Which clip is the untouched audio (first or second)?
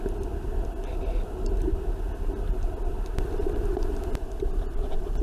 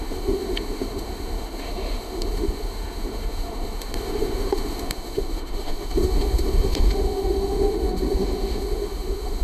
first